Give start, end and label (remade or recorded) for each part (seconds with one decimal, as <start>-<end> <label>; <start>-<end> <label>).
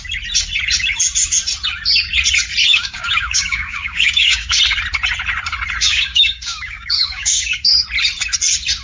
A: 0.0-2.6 recorded; 2.6-4.6 remade; 4.6-5.8 recorded; 5.8-7.7 remade; 7.7-8.8 recorded